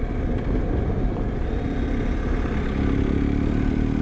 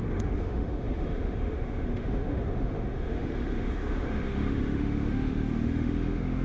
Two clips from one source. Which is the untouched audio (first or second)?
first